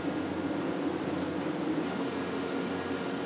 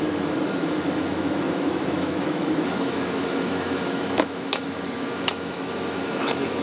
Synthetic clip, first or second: second